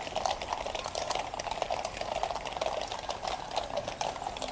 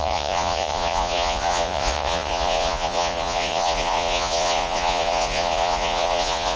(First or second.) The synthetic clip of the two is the second